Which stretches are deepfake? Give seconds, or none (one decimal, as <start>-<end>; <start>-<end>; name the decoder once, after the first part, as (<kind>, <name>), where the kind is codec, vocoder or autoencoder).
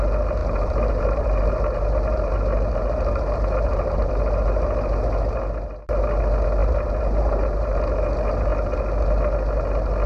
0.4-4.1 (vocoder, BigVGAN v2); 6.6-7.8